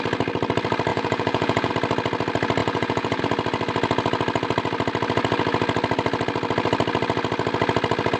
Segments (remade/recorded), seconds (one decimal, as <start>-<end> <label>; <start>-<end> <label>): 0.0-0.9 recorded; 0.9-1.7 remade; 1.7-2.6 recorded; 2.6-3.2 remade; 3.2-8.2 recorded